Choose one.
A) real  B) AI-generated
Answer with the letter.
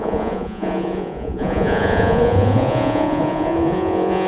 B